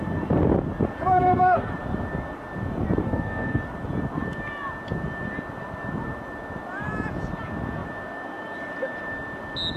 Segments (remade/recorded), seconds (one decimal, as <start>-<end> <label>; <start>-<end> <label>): 0.0-1.1 recorded; 1.1-1.7 remade; 1.7-3.0 recorded; 3.0-3.6 remade; 3.6-9.8 recorded